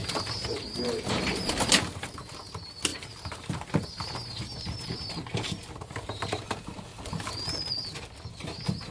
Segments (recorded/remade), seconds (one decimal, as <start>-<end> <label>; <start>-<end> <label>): 0.0-2.3 remade; 2.3-2.9 recorded; 2.9-6.4 remade; 6.4-8.9 recorded